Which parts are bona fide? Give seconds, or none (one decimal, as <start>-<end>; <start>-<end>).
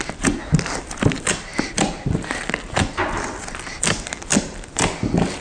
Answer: 0.0-5.4